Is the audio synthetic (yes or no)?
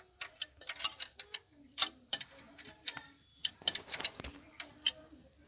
yes